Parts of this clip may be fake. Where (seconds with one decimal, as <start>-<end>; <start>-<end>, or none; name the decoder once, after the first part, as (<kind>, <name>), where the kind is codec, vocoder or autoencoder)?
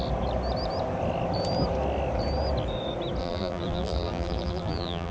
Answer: 3.2-5.1 (vocoder, BigVGAN v2)